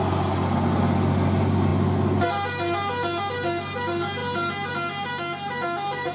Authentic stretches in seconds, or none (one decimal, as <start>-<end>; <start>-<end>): 0.0-6.1